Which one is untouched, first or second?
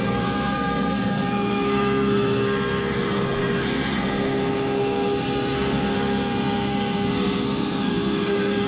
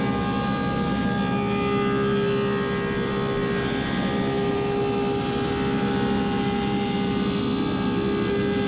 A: second